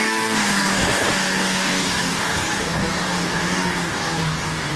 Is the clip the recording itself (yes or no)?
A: no